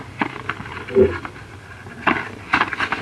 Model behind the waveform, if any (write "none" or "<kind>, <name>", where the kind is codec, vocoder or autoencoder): none